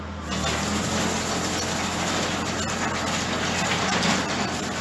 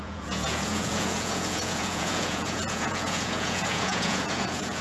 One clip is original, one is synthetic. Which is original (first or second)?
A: first